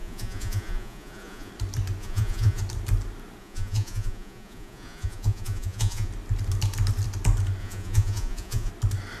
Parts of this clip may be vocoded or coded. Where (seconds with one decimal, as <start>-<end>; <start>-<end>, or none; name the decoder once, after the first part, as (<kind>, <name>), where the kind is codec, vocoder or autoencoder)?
0.0-1.5 (vocoder, Vocos); 2.0-2.6; 3.4-6.1; 7.6-8.7